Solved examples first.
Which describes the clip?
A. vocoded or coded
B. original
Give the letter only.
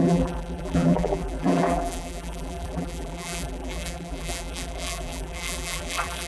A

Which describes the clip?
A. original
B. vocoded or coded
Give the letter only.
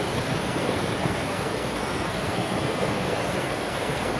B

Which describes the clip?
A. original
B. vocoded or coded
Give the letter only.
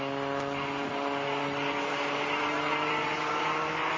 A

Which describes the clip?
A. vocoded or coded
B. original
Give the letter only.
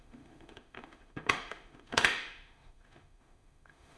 A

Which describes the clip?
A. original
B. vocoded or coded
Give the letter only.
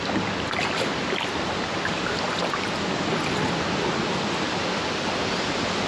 A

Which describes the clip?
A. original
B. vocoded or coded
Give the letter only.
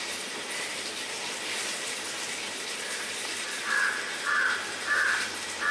A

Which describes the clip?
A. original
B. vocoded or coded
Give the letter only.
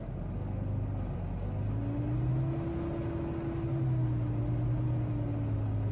A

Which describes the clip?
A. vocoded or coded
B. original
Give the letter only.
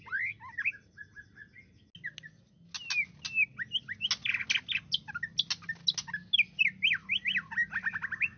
B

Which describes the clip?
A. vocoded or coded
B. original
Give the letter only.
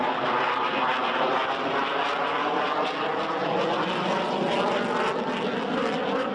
B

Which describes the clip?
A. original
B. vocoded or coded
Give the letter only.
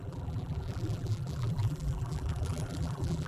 B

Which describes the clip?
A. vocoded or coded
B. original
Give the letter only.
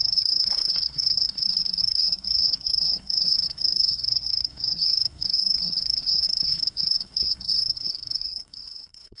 A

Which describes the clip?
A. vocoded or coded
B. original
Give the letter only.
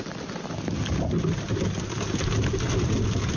B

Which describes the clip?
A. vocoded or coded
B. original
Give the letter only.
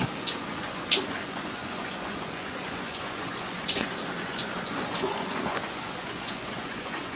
A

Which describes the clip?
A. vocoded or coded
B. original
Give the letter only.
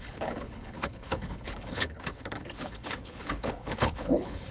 A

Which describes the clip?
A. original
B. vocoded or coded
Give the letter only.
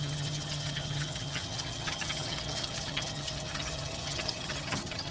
B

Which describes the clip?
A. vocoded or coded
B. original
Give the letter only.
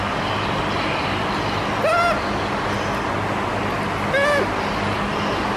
B